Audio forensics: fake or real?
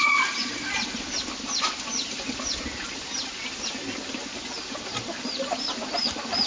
real